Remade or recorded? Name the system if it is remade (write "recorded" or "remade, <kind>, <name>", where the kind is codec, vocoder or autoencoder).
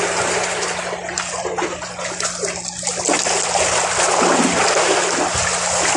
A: recorded